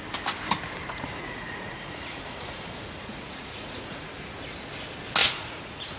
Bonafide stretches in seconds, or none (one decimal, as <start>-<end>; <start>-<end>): 0.0-0.8; 4.1-5.2